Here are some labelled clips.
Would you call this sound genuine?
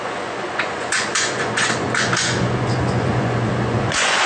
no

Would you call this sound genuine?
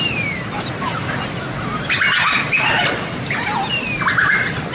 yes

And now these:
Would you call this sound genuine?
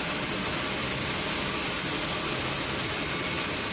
yes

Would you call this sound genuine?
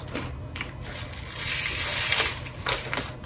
yes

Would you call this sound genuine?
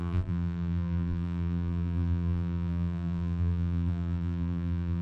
no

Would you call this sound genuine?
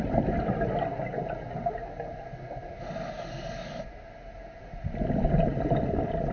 yes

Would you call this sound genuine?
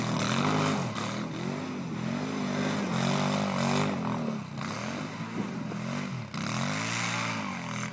yes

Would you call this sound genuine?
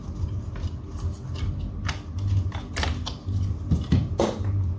yes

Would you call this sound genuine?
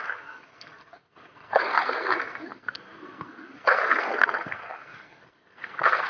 no